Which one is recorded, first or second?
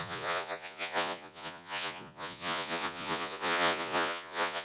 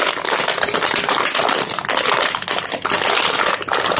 second